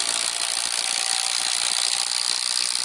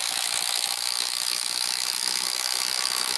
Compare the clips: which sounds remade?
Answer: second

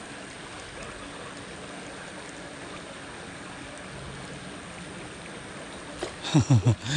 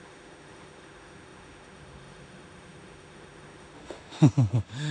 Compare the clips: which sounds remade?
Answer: second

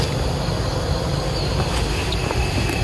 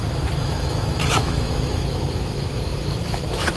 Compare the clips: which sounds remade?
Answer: second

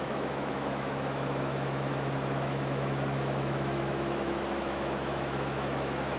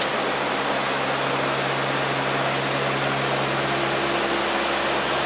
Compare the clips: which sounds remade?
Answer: first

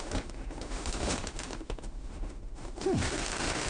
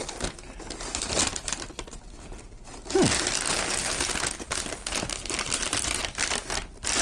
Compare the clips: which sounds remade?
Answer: first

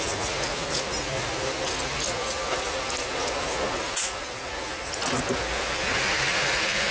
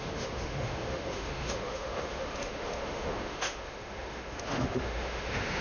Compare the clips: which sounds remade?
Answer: second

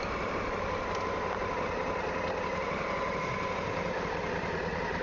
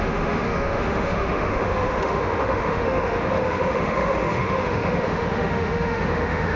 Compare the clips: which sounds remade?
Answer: second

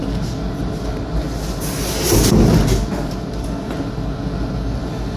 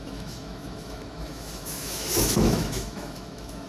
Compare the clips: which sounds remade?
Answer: second